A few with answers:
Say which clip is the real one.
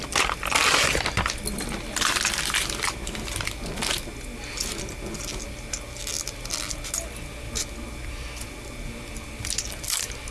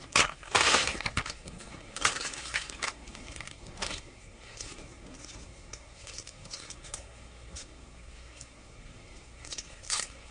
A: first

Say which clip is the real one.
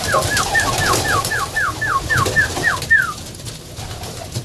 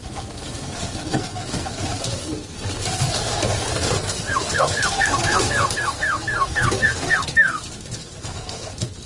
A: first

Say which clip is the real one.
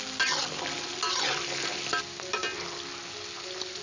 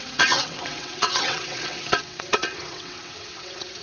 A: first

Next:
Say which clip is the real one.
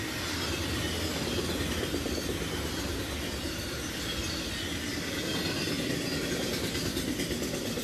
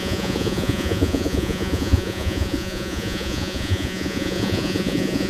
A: first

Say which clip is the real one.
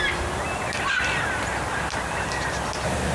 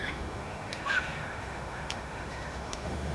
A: first